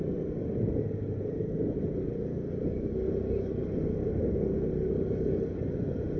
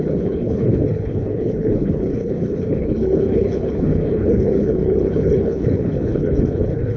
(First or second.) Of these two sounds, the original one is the first